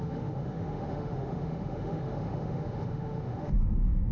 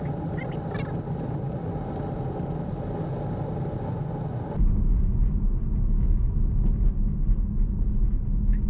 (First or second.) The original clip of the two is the second